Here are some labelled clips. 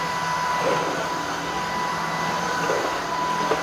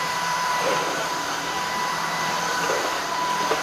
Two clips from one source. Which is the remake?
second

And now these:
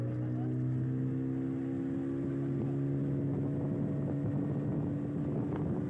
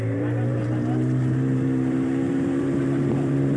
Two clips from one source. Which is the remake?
second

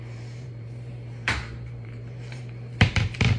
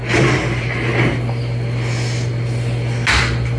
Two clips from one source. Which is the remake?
first